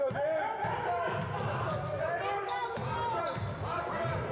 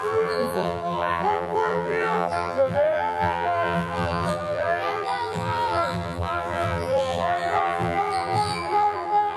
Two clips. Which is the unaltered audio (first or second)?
first